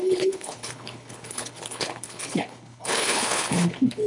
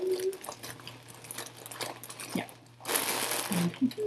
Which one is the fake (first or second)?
first